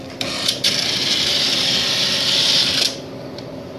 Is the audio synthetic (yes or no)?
yes